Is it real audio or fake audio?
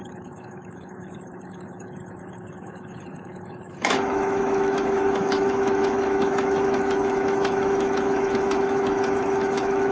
fake